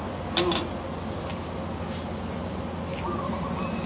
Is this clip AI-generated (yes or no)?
no